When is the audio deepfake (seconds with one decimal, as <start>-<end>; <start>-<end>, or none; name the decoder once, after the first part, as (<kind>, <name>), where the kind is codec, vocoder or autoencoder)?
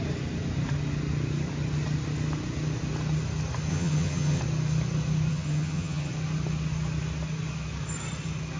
3.7-4.4 (vocoder, HiFi-GAN); 5.3-6.1